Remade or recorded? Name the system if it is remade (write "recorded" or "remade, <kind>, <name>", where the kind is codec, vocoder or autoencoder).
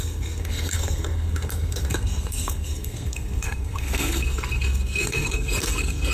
remade, codec, SNAC